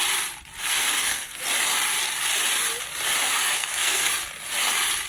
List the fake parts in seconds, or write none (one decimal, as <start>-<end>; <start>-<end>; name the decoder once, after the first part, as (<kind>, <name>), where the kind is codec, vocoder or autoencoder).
0.6-1.4 (codec, SNAC); 3.2-4.1